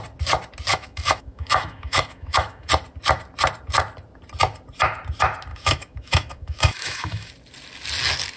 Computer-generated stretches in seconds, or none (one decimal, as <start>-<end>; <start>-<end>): 0.7-2.7; 5.5-7.3